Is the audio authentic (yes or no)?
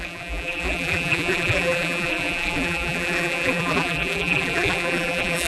no